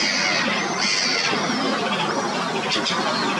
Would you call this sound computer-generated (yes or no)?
no